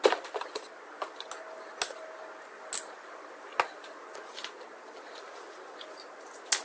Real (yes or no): yes